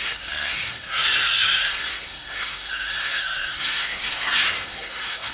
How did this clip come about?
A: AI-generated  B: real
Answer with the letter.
A